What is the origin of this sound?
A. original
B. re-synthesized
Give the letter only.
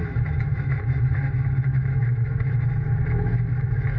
B